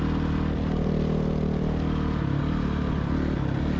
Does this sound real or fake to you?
real